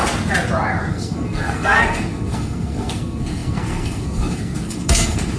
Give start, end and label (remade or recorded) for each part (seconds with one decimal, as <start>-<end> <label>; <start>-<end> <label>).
0.0-0.9 recorded; 0.9-5.4 remade